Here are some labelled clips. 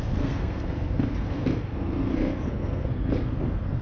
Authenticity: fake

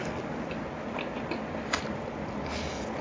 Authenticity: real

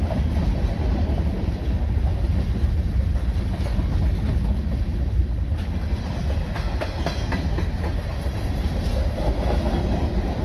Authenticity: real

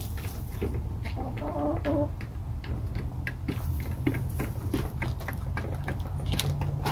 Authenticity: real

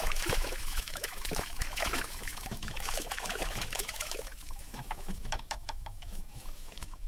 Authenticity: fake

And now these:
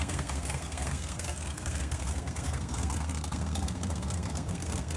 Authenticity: fake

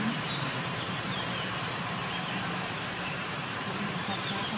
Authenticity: fake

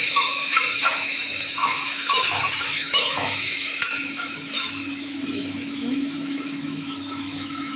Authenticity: fake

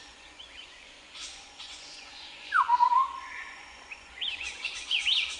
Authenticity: fake